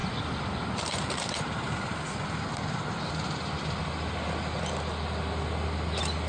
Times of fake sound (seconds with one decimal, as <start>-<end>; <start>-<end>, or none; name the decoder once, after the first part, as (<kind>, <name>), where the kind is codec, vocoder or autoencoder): none